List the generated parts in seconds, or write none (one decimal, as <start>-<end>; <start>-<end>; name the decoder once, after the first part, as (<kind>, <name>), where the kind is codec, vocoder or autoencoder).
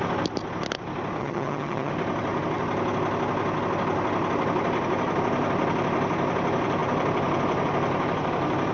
1.2-1.9 (vocoder, HiFi-GAN)